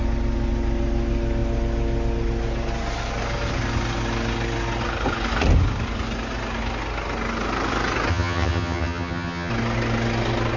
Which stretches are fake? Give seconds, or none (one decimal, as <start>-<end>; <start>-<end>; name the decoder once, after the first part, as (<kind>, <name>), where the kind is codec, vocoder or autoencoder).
8.1-9.5 (vocoder, HiFi-GAN)